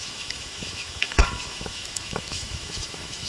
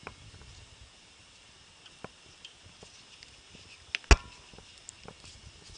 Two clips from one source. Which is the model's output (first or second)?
first